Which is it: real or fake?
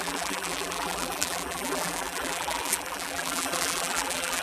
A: fake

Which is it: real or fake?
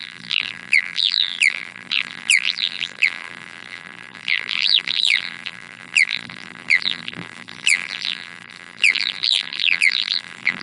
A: fake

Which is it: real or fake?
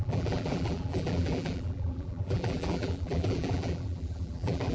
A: fake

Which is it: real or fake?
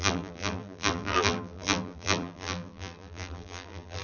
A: fake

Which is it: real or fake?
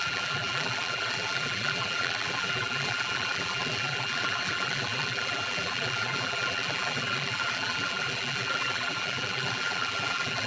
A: fake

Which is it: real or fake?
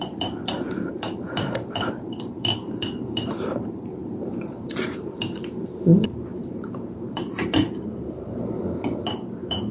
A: fake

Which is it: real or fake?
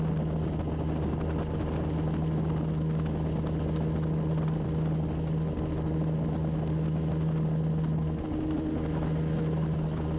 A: real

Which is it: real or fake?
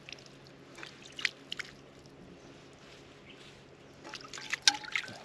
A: real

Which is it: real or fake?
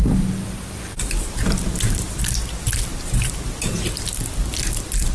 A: fake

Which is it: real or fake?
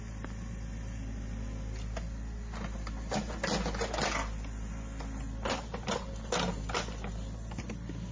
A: real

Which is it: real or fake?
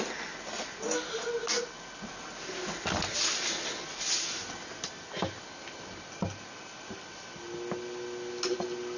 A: real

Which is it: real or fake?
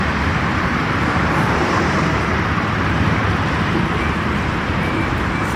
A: fake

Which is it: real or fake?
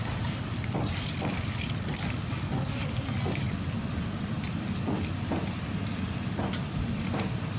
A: fake